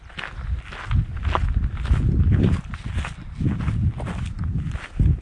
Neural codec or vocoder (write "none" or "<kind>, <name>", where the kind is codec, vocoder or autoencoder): none